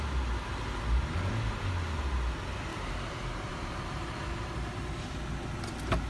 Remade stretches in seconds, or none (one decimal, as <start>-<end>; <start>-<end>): 2.7-4.8